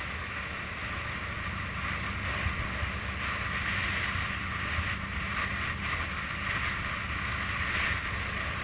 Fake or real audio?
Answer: real